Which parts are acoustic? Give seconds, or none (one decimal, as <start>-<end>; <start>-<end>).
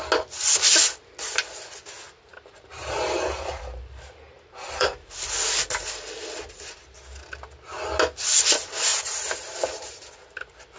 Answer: 0.0-2.3; 5.1-8.9; 10.0-10.8